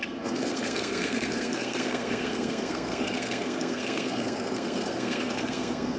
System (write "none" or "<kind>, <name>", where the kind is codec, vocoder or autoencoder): codec, SNAC